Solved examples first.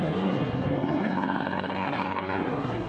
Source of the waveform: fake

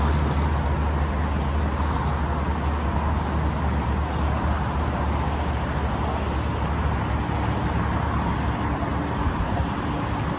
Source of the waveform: real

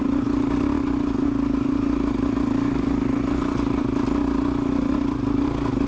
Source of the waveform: real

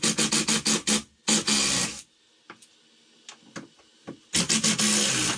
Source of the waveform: real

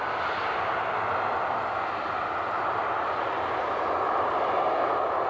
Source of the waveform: real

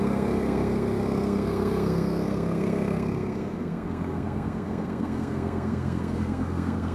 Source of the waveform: fake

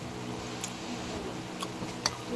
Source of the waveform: real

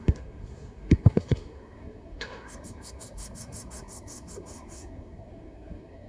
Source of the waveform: fake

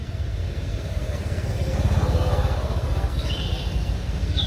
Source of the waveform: fake